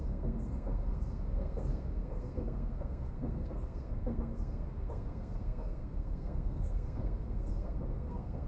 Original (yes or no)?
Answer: no